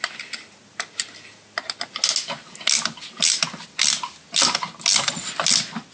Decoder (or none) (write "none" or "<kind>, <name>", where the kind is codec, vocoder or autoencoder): none